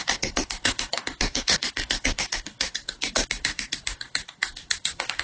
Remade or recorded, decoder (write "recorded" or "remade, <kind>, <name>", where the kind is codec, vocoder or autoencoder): remade, codec, DAC